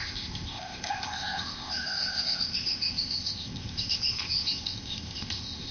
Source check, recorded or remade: remade